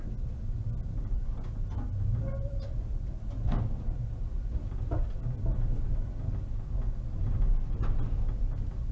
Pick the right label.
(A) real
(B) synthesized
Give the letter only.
A